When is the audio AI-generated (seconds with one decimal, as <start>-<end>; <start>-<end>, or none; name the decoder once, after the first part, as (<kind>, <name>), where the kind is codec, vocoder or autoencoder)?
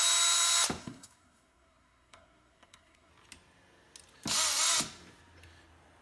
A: 0.8-3.1 (codec, SNAC)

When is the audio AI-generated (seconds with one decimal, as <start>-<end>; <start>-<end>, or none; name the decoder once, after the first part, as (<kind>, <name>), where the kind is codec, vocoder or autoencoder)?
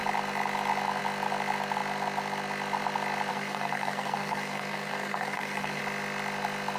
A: 3.3-5.8 (codec, SNAC)